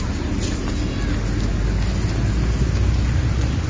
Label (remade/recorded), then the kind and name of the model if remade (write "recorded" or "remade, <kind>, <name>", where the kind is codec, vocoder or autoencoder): recorded